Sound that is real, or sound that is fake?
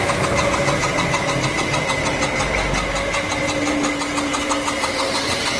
real